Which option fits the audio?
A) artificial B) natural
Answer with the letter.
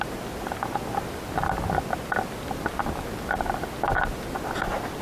B